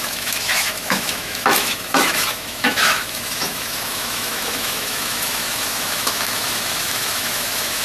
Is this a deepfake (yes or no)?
yes